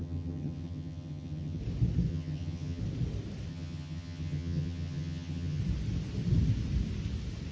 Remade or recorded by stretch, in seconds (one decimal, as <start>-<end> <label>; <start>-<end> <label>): 0.0-1.6 remade; 1.6-2.1 recorded; 2.1-2.8 remade; 2.8-3.5 recorded; 3.5-5.6 remade; 5.6-7.5 recorded

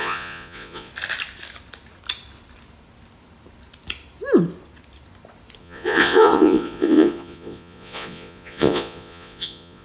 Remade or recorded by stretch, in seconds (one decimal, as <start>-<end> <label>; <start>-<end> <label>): 0.0-0.9 remade; 0.9-5.6 recorded; 5.6-9.8 remade